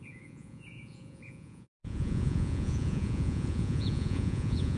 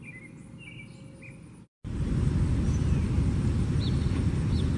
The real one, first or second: second